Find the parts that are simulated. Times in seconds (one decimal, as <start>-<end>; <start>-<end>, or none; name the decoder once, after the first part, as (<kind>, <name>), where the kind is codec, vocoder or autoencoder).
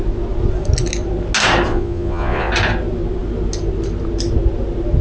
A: 1.7-2.5 (vocoder, Vocos)